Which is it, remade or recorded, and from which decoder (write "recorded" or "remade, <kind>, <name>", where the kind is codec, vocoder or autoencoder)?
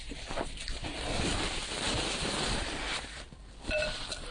remade, vocoder, BigVGAN v2